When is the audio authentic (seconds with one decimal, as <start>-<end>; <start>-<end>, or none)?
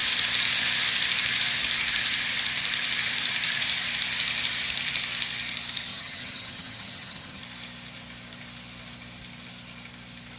0.0-5.9; 7.4-10.4